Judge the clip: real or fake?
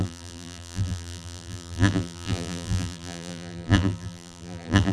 fake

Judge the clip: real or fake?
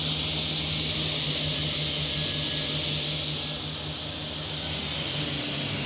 real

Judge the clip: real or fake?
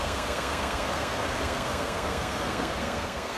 fake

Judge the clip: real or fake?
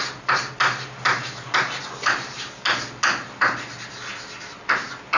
real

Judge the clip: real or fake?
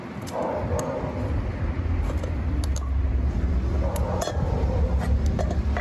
real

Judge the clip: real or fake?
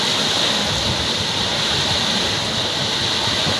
real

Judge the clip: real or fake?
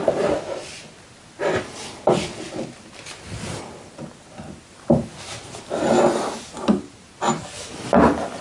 real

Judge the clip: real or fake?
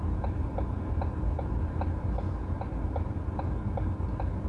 real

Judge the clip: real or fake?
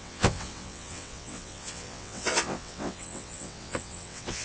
fake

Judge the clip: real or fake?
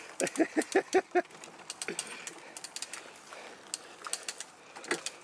real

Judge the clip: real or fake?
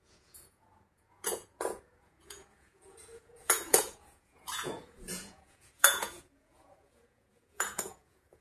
fake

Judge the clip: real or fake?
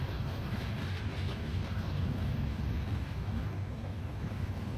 fake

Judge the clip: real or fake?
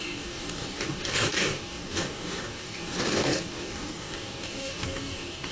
fake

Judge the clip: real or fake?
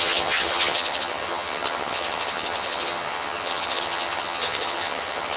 fake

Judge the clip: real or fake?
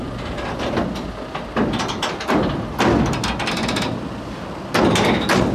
real